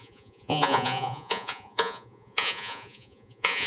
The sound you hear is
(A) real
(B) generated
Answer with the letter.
B